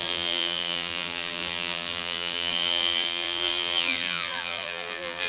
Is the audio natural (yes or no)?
no